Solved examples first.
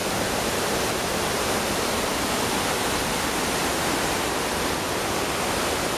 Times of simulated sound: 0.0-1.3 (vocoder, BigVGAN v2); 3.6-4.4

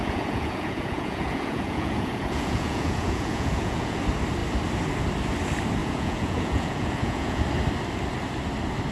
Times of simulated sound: 0.0-4.0 (vocoder, Vocos); 5.8-7.4

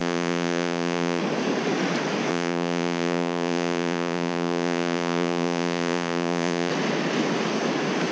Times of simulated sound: 0.0-1.2 (vocoder, Vocos); 2.3-6.7